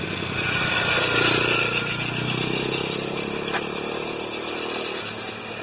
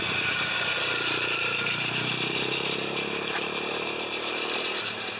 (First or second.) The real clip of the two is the first